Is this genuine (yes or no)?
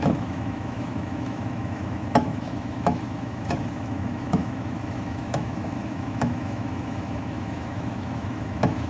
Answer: no